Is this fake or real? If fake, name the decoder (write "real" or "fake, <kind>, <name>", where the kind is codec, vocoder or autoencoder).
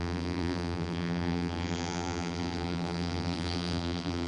fake, vocoder, BigVGAN v2